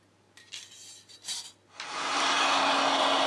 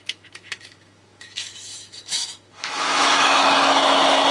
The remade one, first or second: second